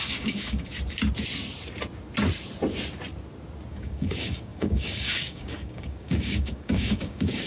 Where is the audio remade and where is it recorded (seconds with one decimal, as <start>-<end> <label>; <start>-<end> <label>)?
0.0-0.7 remade; 0.7-3.7 recorded; 3.7-7.5 remade